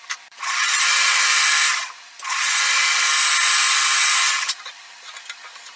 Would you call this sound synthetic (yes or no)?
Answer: no